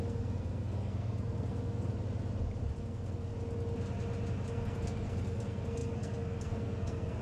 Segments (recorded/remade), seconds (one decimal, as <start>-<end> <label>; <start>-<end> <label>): 0.0-1.9 remade; 1.9-2.8 recorded; 2.8-3.3 remade; 3.3-4.5 recorded; 4.5-7.2 remade